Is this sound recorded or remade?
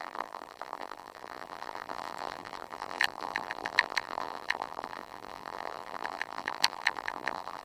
remade